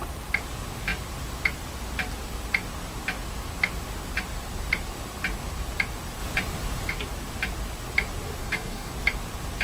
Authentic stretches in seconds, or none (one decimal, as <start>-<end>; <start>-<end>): 0.0-8.4; 8.9-9.6